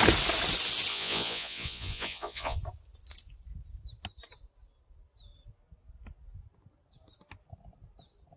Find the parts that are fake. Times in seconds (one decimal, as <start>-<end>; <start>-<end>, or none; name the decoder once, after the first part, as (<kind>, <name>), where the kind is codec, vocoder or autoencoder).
0.9-2.6 (vocoder, Vocos)